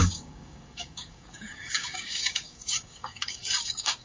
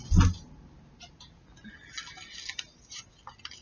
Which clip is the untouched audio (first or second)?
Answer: second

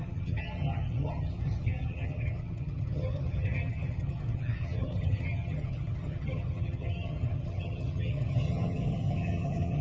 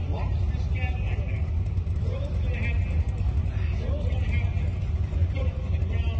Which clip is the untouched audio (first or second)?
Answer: second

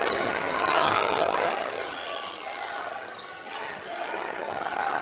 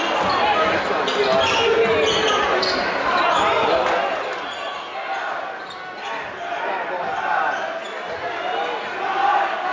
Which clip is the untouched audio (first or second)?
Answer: second